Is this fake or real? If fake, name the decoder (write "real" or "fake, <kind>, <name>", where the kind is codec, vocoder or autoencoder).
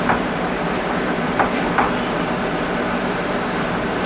fake, vocoder, BigVGAN v2